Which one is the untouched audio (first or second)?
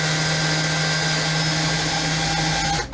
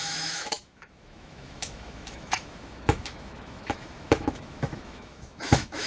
first